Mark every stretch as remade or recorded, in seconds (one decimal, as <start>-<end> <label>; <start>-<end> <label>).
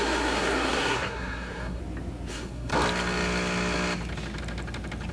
0.0-1.8 remade; 1.8-2.3 recorded; 2.3-2.7 remade; 2.7-5.1 recorded